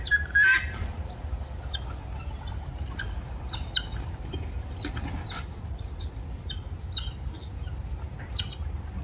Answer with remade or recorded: recorded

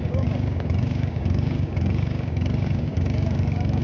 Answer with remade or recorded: remade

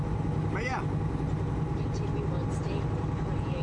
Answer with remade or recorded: recorded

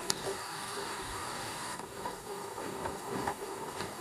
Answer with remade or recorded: remade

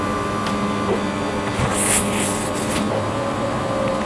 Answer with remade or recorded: recorded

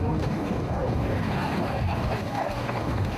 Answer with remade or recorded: remade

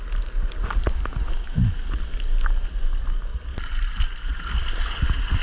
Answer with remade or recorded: recorded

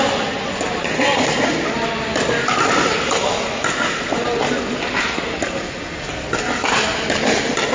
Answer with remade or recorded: recorded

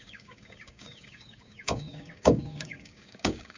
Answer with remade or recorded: remade